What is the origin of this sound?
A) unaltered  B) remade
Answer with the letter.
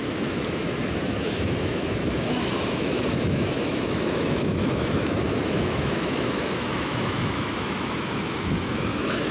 B